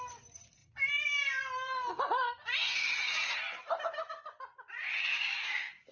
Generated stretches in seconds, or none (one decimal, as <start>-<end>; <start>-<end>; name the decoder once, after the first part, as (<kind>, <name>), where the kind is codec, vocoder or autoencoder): 5.1-5.9 (codec, DAC)